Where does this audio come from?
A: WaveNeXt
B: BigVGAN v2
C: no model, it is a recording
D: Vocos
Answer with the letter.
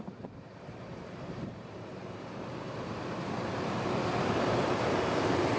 B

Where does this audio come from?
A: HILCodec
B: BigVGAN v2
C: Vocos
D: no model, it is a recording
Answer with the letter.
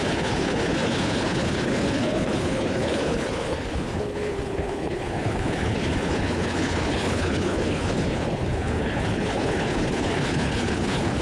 A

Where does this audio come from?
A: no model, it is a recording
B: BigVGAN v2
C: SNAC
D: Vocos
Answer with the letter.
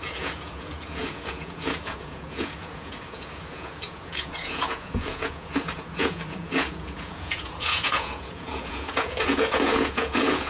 D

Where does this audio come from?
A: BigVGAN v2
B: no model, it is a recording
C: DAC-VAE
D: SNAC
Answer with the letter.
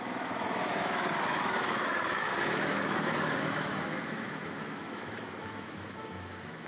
C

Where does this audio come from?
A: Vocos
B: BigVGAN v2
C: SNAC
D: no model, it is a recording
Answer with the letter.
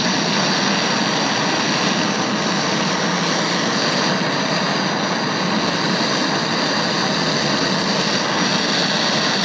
D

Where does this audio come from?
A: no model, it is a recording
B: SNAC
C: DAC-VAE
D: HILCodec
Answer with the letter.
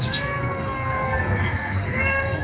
B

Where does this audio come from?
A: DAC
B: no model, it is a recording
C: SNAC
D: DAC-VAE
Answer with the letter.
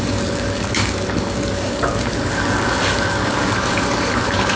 A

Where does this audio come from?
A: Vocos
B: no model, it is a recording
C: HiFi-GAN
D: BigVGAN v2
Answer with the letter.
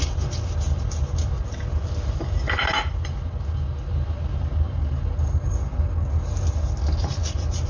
B